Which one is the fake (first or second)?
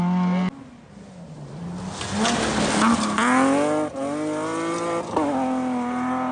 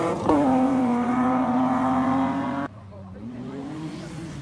second